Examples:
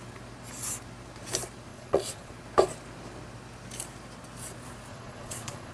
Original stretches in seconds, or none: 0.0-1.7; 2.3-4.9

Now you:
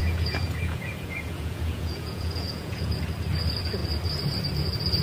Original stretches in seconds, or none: 3.0-5.0

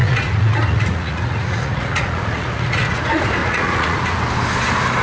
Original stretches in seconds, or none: 3.0-3.4; 4.0-5.0

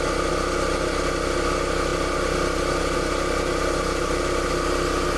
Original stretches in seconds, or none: 0.0-5.2